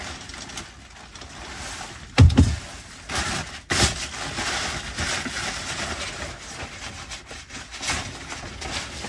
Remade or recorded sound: recorded